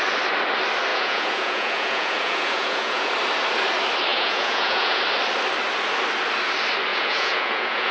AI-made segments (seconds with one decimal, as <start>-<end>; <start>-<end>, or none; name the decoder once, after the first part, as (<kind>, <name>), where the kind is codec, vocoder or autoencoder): 0.9-3.1 (vocoder, Vocos); 4.1-5.0; 6.9-7.9